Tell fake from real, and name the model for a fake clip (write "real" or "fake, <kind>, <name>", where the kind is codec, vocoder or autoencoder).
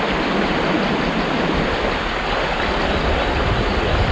real